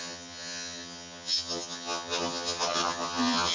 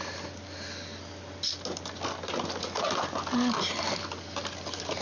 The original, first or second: second